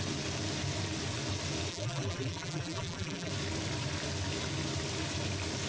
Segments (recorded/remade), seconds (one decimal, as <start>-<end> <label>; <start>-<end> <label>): 0.0-1.7 recorded; 1.7-3.3 remade; 3.3-5.7 recorded